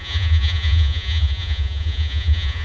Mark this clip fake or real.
fake